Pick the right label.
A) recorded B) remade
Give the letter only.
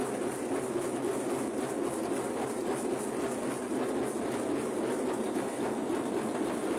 A